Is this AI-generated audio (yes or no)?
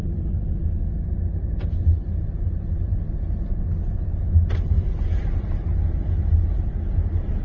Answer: no